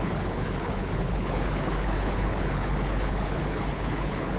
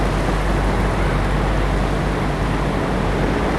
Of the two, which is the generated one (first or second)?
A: first